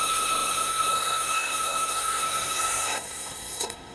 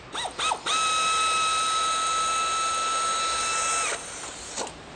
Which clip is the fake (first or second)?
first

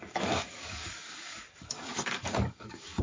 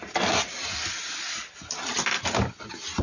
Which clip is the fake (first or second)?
first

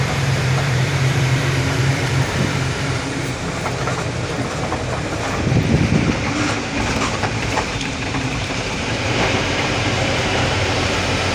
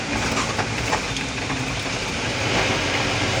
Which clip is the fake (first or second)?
first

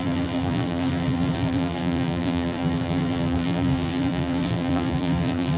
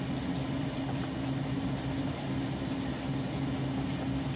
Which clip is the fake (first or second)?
first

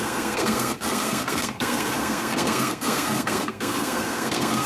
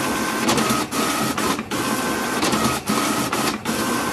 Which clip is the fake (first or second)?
first